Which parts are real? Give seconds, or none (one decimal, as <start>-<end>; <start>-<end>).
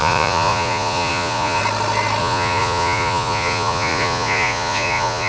1.6-2.2